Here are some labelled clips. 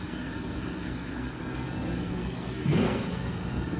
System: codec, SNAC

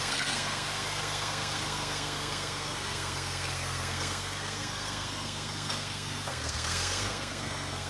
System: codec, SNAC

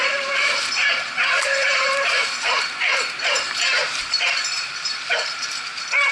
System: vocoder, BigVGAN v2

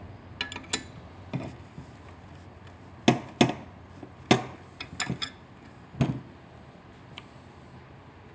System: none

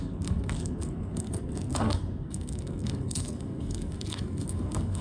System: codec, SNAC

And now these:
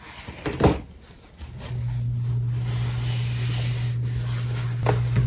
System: none